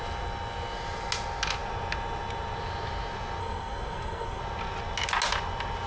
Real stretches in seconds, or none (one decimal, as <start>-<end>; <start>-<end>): 0.0-3.4; 4.4-5.9